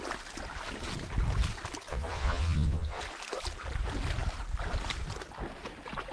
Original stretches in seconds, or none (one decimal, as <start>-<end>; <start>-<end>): 0.0-1.9; 3.0-6.1